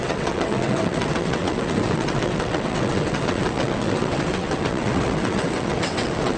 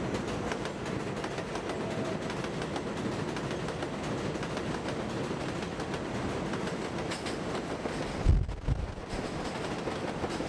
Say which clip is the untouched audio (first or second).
second